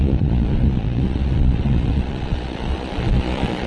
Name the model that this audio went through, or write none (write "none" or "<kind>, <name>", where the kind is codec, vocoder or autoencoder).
vocoder, Vocos